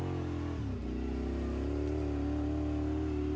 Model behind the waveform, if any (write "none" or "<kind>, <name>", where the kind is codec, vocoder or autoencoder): none